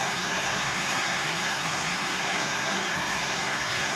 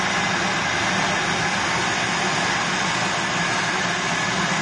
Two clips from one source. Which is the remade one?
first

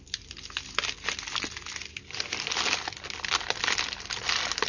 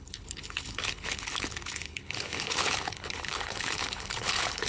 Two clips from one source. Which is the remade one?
second